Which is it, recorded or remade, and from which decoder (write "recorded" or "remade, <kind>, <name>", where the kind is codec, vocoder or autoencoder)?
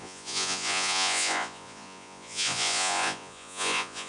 remade, vocoder, Vocos